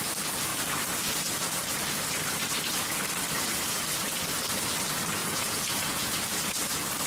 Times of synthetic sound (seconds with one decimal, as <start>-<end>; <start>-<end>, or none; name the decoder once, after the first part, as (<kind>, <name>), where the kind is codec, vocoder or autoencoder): 5.2-6.2 (vocoder, Vocos)